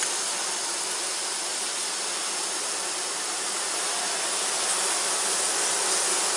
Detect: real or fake real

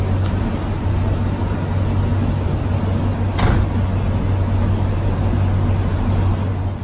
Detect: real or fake real